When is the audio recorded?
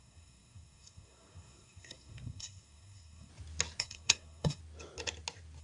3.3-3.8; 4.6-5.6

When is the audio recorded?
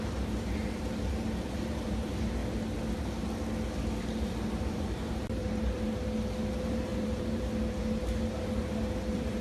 2.4-4.6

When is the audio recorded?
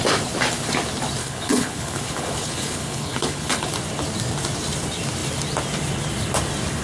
0.0-1.2; 3.7-6.8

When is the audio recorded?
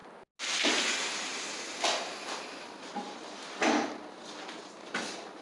0.0-5.4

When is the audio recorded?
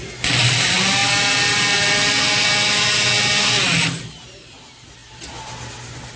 0.0-6.2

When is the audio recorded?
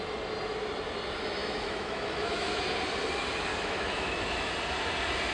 0.0-1.4; 2.6-3.5; 4.5-5.3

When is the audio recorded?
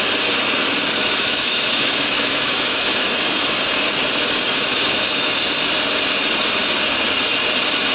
0.0-1.0; 3.6-4.7; 5.3-7.9